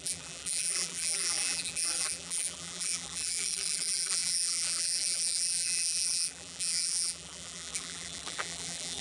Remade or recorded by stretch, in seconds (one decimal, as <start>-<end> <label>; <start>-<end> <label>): 0.0-9.0 remade